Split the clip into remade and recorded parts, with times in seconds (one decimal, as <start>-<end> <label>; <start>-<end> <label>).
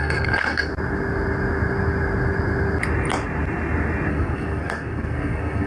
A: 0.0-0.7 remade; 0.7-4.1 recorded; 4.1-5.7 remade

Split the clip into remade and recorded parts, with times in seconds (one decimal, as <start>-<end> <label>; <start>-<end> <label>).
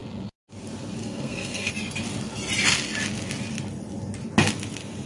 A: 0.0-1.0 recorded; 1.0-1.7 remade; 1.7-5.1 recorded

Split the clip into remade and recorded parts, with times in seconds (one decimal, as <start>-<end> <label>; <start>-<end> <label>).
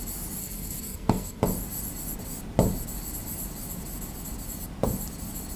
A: 0.0-0.4 recorded; 0.4-1.4 remade; 1.4-5.6 recorded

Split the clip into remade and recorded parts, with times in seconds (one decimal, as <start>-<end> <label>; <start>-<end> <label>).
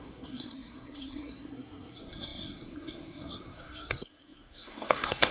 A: 0.0-5.3 remade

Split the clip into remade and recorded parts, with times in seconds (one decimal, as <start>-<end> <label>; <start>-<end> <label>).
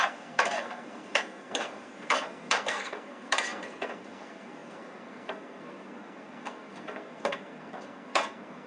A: 0.0-8.7 remade